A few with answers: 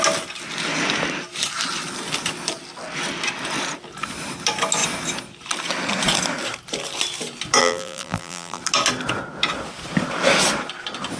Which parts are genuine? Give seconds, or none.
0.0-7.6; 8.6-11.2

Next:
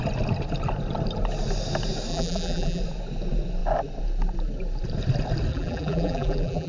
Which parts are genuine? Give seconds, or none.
0.0-2.1; 2.8-5.5

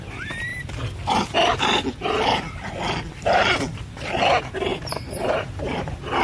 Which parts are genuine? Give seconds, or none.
0.0-4.7; 5.6-6.2

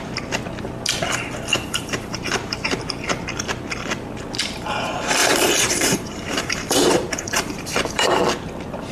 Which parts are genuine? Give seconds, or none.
0.0-1.5; 2.8-5.2; 8.2-8.9